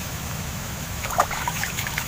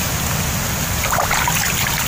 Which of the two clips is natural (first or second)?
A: second